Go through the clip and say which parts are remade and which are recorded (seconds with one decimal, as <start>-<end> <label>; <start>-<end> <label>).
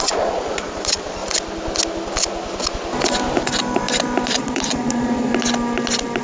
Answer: 0.0-1.2 remade; 1.2-4.3 recorded; 4.3-5.3 remade; 5.3-6.2 recorded